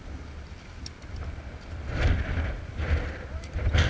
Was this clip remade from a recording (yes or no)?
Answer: no